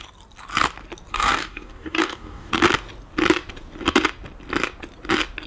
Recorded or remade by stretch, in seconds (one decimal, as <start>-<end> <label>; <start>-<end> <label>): 0.0-1.1 recorded; 1.1-2.5 remade; 2.5-5.5 recorded